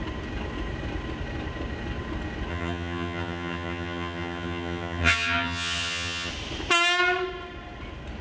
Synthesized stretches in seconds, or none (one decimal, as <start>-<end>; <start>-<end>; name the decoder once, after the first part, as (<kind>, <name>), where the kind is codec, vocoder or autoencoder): 2.5-6.3 (vocoder, HiFi-GAN)